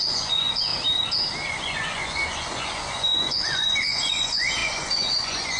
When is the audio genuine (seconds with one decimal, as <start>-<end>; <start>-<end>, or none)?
0.7-1.5